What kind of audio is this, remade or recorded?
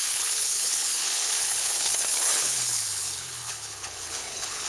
remade